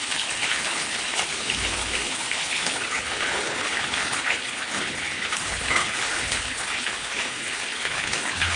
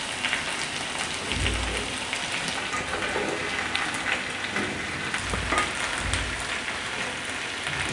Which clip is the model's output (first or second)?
first